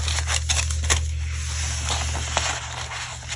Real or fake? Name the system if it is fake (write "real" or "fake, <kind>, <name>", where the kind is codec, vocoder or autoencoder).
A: real